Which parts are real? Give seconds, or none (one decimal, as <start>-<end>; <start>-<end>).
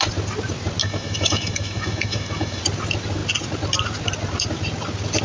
0.0-0.8; 2.6-5.2